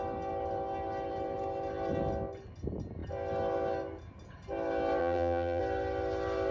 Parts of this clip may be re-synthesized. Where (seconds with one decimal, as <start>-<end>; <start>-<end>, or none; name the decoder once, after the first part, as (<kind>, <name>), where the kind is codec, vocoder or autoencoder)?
5.0-5.6 (vocoder, BigVGAN v2)